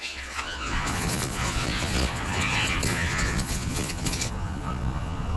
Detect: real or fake fake